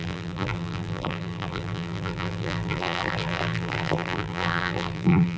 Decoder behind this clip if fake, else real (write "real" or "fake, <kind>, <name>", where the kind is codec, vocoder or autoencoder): fake, vocoder, BigVGAN v2